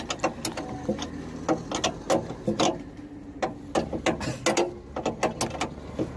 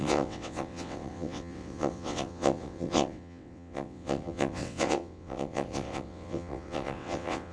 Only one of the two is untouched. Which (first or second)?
first